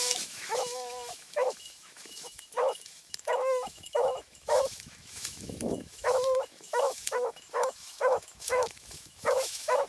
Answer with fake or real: fake